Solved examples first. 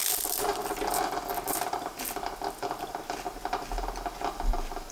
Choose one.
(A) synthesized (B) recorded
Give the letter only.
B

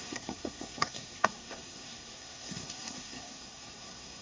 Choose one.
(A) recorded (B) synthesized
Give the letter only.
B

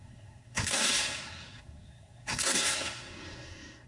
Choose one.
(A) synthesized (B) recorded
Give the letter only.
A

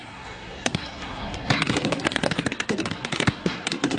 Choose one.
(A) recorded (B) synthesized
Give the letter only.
B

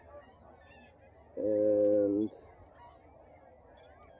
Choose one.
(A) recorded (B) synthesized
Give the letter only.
A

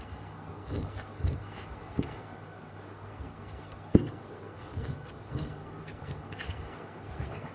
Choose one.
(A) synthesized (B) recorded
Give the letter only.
A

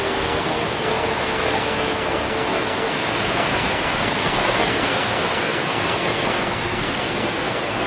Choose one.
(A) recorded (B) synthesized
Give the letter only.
B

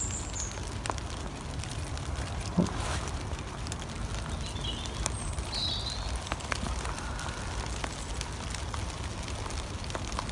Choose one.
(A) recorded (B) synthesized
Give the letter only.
A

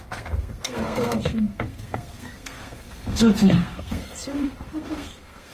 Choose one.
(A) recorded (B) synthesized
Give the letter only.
B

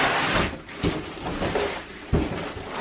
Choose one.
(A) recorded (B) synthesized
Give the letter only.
A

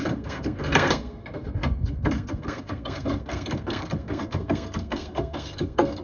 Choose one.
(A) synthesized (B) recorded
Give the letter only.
A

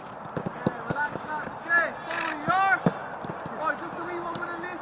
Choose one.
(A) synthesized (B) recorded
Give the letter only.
B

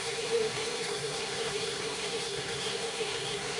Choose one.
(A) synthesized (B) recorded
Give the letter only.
A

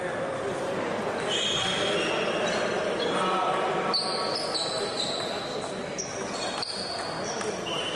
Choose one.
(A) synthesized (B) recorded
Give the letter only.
B